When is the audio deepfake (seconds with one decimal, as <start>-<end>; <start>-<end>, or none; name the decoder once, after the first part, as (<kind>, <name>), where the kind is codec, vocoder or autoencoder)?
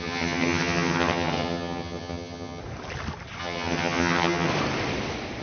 0.0-2.6 (vocoder, HiFi-GAN); 3.4-4.5